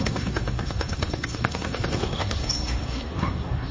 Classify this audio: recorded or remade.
remade